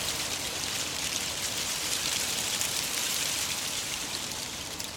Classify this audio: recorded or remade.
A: remade